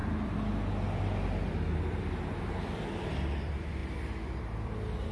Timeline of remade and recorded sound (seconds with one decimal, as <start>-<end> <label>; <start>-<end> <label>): 0.0-3.8 remade; 3.8-4.4 recorded; 4.4-5.1 remade